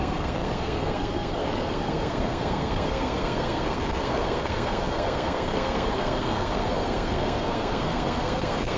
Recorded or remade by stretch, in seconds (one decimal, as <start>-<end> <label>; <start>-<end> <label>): 0.0-8.8 remade